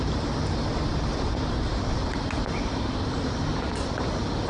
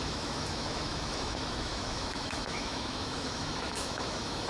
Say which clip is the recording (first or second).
first